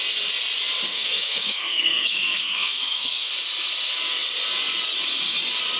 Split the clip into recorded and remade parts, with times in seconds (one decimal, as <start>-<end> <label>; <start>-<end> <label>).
0.0-0.9 recorded; 0.9-3.3 remade; 3.3-5.8 recorded